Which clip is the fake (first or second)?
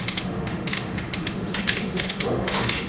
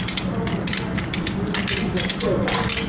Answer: first